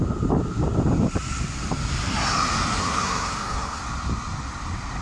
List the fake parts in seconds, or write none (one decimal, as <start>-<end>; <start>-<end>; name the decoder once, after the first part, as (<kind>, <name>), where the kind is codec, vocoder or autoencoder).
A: 2.7-3.8 (codec, SNAC)